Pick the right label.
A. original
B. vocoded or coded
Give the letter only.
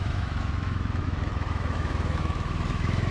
B